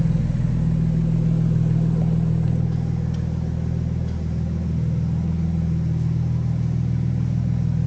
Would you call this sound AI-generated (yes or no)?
no